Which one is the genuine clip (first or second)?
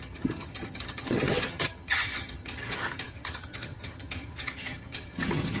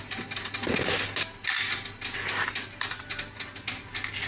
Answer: second